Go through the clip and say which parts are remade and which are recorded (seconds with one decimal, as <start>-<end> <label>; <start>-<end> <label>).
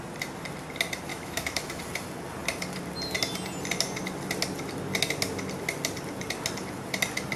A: 0.0-1.1 recorded; 1.1-1.8 remade; 1.8-7.4 recorded